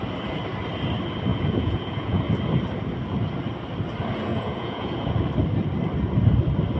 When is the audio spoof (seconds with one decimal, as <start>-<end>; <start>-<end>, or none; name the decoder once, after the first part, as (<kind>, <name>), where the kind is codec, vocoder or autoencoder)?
1.3-2.2 (vocoder, Vocos); 4.3-5.3